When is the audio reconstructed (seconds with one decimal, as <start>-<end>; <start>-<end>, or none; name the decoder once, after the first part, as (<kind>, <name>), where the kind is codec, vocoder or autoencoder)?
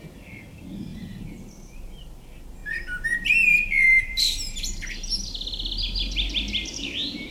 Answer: 0.9-1.5 (vocoder, BigVGAN v2)